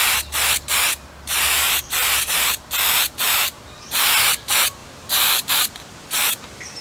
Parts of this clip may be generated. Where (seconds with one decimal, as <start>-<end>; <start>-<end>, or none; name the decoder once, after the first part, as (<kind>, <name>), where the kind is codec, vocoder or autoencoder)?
0.0-6.8 (vocoder, BigVGAN v2)